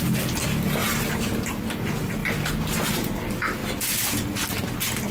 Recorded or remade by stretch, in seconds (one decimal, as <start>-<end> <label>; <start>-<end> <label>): 0.0-0.8 recorded; 0.8-1.5 remade; 1.5-2.2 recorded; 2.2-2.9 remade; 2.9-5.1 recorded